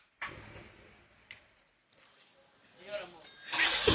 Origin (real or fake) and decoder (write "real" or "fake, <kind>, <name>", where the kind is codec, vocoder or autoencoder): real